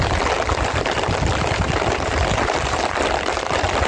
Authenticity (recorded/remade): recorded